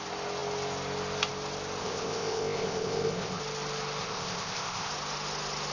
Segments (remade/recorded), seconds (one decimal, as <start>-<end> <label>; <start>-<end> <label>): 0.0-1.8 recorded; 1.8-3.4 remade; 3.4-4.0 recorded; 4.0-4.9 remade; 4.9-5.7 recorded